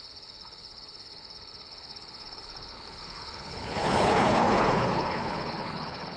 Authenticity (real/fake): fake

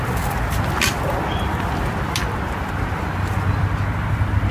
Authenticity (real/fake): real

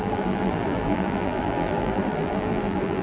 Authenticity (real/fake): fake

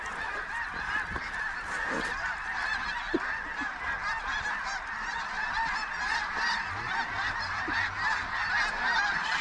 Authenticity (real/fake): real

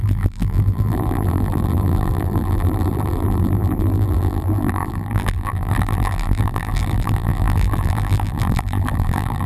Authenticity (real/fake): fake